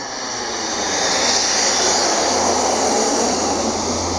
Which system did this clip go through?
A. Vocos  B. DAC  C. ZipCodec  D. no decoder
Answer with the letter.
D